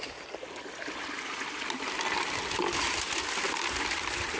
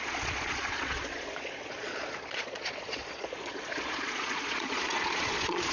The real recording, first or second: first